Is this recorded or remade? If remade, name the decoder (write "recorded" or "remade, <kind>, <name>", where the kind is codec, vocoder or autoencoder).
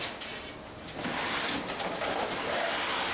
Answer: recorded